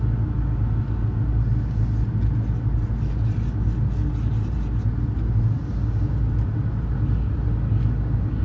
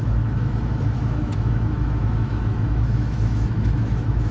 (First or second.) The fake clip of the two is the second